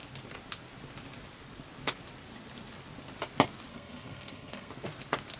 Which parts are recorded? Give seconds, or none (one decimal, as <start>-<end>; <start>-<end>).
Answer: 0.0-3.7; 4.7-5.4